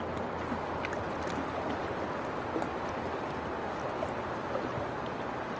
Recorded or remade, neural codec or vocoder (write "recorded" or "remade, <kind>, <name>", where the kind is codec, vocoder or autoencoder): recorded